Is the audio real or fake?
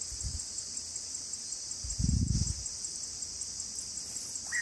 real